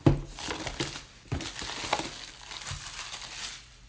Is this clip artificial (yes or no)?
no